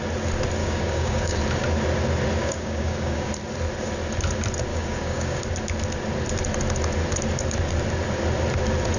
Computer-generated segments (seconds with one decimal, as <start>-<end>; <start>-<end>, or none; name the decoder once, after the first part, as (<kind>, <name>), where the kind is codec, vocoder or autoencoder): 0.6-1.4 (codec, DAC); 2.4-3.3; 4.7-5.4